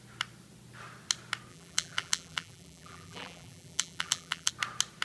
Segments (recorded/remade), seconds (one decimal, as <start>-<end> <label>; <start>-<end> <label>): 0.0-1.5 recorded; 1.5-4.5 remade; 4.5-5.0 recorded